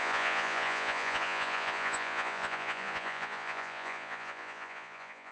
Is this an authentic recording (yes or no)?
no